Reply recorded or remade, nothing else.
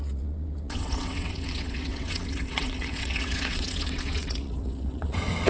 remade